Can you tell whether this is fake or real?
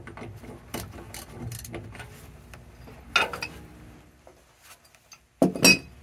real